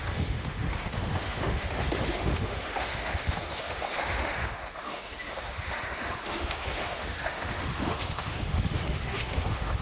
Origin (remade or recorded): remade